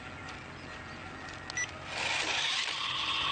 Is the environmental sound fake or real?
real